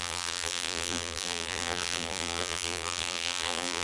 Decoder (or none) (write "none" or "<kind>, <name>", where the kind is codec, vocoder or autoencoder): vocoder, BigVGAN v2